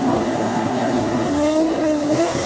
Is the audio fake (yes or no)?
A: yes